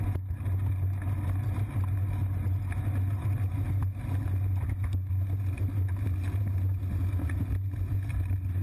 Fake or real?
real